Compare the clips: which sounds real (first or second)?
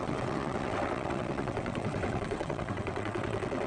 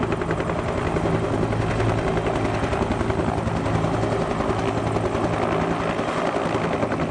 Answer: second